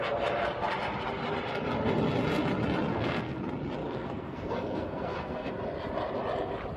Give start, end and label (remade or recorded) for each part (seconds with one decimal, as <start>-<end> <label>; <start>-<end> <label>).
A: 0.0-2.9 recorded; 2.9-3.4 remade; 3.4-3.8 recorded; 3.8-5.5 remade; 5.5-6.8 recorded